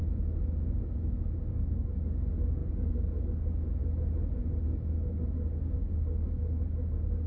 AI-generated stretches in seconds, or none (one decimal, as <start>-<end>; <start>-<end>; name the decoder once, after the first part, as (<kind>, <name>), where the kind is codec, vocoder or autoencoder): 1.4-3.8 (codec, DAC); 4.6-7.3